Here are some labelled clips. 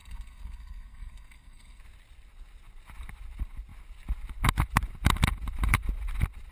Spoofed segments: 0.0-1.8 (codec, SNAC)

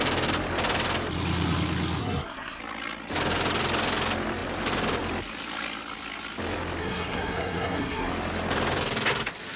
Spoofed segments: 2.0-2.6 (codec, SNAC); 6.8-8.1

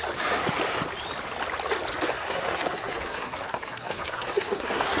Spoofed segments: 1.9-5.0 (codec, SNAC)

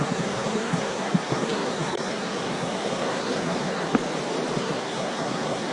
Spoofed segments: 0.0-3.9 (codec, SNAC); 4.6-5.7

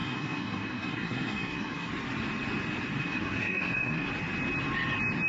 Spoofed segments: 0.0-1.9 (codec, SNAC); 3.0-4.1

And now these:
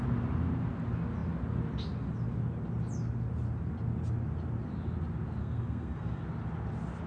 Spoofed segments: 5.4-6.2 (codec, SNAC)

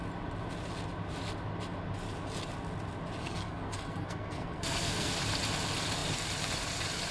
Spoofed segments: 3.2-5.2 (codec, SNAC)

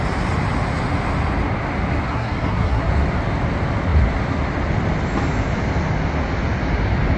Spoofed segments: 2.1-2.8 (codec, SNAC)